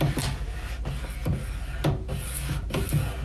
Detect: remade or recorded recorded